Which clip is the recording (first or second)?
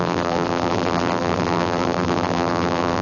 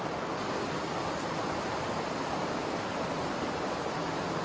second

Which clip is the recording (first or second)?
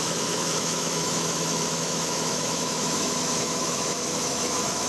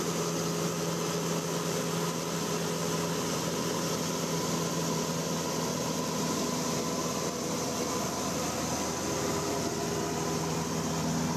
second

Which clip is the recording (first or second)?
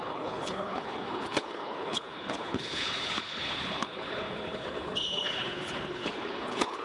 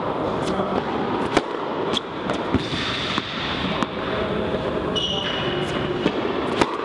second